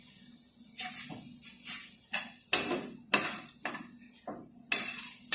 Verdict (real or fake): real